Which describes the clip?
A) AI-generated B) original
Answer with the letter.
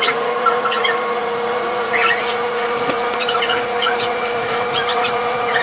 A